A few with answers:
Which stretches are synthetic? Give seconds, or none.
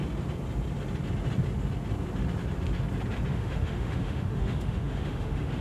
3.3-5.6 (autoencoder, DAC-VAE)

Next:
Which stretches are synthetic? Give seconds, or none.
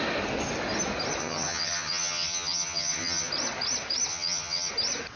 1.2-3.3 (vocoder, HiFi-GAN); 4.1-4.7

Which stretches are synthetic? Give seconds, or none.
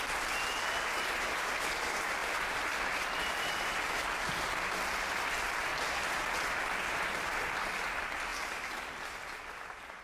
none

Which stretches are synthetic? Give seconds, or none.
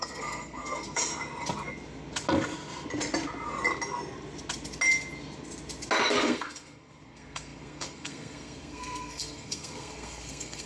0.0-1.1 (codec, SNAC); 6.0-10.7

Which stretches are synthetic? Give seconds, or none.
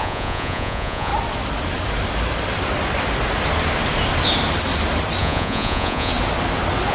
0.0-1.1 (vocoder, Vocos); 5.2-6.1